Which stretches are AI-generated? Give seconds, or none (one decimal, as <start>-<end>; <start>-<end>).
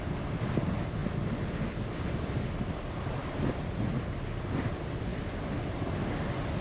0.0-1.0; 1.9-6.6